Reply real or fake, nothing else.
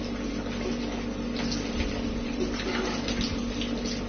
real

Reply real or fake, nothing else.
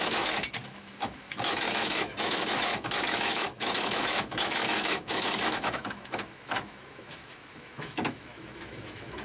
fake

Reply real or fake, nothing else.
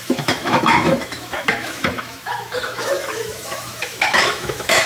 fake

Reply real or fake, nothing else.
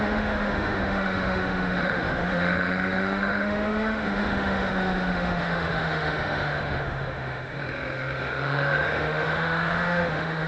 fake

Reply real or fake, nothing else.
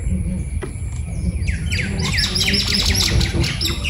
real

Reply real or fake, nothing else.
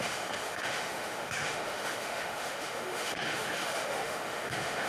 fake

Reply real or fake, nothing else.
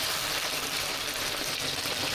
real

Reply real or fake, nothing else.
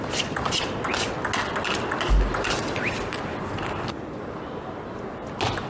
real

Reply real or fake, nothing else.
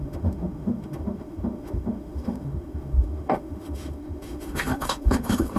fake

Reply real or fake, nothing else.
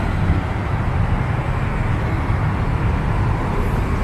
real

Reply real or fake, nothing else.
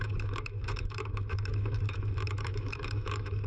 fake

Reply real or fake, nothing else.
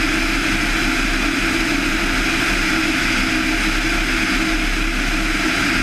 real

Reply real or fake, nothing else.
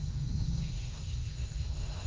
fake